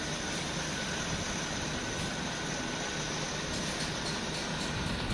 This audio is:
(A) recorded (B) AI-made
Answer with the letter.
A